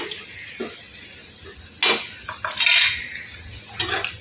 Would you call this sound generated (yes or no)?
no